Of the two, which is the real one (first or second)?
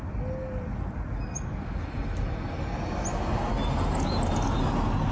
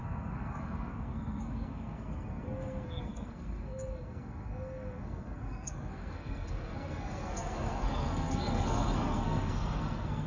first